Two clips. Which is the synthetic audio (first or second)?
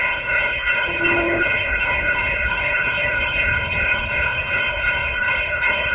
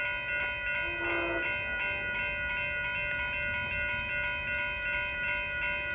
first